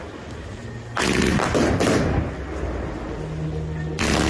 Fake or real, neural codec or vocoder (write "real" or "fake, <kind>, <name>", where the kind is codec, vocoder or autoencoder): real